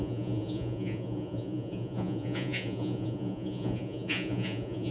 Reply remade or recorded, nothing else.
remade